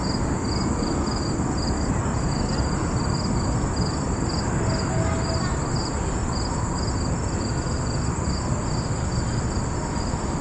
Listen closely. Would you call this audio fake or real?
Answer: real